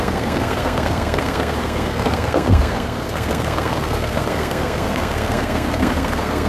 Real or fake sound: fake